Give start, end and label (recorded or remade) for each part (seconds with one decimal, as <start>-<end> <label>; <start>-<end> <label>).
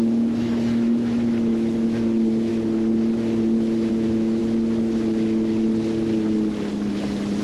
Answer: 0.0-2.5 remade; 2.5-3.9 recorded; 3.9-4.4 remade; 4.4-7.4 recorded